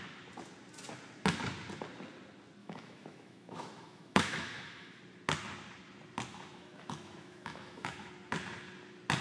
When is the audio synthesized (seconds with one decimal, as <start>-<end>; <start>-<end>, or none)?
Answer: 2.6-5.0; 6.3-8.1